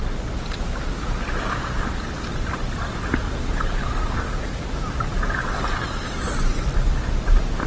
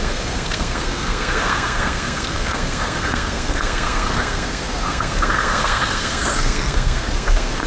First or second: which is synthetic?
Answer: second